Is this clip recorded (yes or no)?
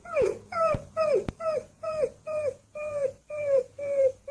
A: no